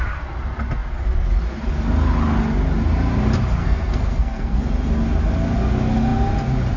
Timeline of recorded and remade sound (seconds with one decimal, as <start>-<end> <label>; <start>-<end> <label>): 0.0-3.6 recorded; 3.6-4.6 remade; 4.6-6.8 recorded